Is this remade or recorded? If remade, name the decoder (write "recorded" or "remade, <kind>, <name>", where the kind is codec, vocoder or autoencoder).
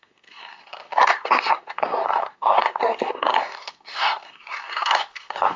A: remade, codec, SNAC